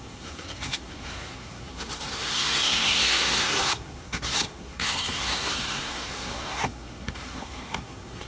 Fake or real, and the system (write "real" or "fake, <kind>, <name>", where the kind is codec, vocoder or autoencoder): fake, codec, SNAC